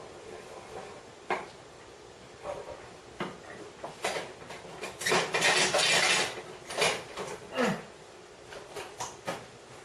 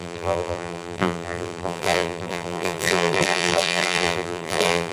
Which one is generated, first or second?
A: second